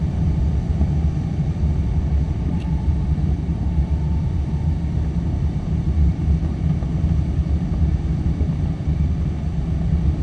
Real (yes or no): no